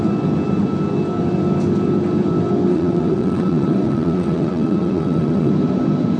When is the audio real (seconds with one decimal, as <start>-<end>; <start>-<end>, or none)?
0.0-2.7; 5.5-6.2